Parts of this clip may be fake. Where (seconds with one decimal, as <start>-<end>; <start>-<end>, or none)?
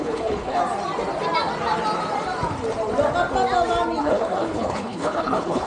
0.0-0.6; 4.0-5.7